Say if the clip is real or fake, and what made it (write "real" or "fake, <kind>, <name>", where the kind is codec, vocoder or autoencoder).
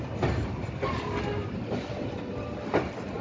real